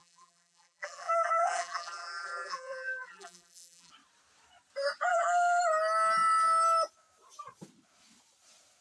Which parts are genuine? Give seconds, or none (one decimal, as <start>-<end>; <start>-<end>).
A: 3.9-5.1; 5.6-8.8